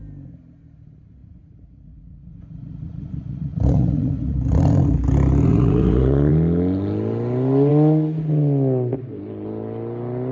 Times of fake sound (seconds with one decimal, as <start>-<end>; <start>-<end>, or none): 1.2-5.0; 5.5-6.3

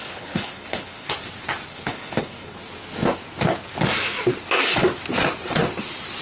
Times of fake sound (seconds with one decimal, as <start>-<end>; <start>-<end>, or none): 0.0-1.1; 1.7-2.6

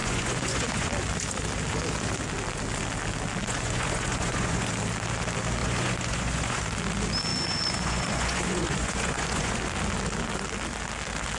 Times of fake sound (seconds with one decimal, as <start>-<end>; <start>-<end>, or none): 0.0-0.9; 3.4-4.7; 5.6-6.6; 7.3-9.6

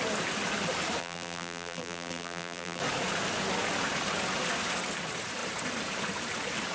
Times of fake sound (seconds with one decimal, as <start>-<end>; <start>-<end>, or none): 1.0-2.8

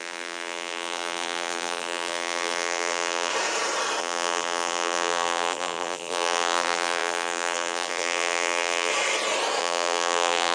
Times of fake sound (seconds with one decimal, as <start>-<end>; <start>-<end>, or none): 0.0-3.3; 4.0-8.9; 9.6-10.5

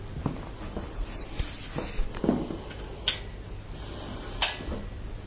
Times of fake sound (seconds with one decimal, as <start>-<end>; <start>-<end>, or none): none

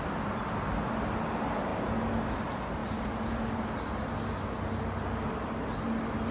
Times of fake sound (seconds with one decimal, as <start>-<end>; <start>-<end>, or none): none

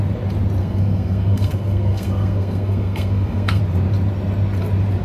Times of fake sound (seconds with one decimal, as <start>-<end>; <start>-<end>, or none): 0.6-3.6